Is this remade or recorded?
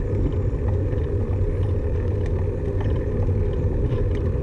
recorded